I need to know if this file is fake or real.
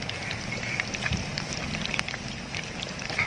real